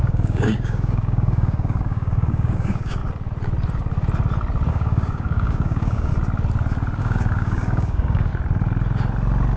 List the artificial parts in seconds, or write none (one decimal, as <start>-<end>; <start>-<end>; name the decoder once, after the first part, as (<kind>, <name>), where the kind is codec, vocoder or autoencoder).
0.0-3.0 (codec, DAC); 4.7-6.1; 7.0-8.3